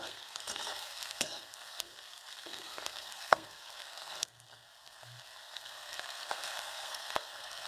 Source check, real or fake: fake